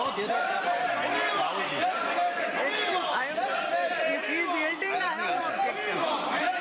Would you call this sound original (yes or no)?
yes